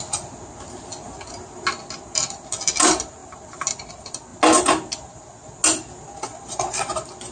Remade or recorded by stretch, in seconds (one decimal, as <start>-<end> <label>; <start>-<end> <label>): 0.0-7.3 recorded